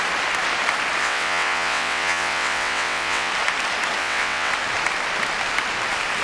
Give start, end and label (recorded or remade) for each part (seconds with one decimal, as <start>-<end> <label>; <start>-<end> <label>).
0.0-1.0 recorded; 1.0-3.3 remade; 3.3-4.0 recorded; 4.0-4.5 remade; 4.5-6.2 recorded